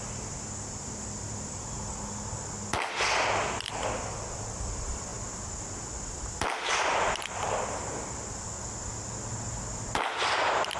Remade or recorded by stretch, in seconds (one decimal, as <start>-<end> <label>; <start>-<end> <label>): 0.0-10.8 recorded